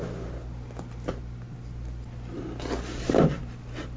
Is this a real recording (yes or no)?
yes